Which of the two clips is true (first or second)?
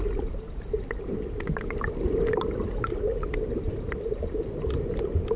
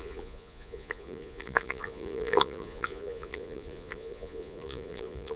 first